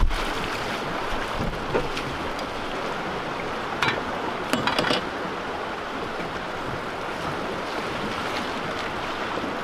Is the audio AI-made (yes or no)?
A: no